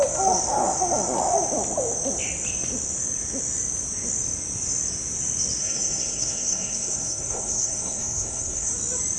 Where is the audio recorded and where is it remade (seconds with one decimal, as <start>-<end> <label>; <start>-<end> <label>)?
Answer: 0.0-5.6 recorded; 5.6-8.7 remade; 8.7-9.2 recorded